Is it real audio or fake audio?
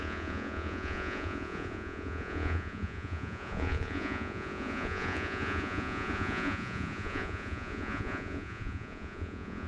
fake